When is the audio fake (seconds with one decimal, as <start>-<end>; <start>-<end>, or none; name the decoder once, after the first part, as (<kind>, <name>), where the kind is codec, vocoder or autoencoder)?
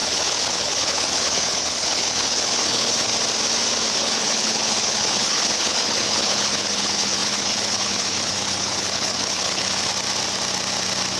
0.0-3.1 (codec, HILCodec); 3.9-9.9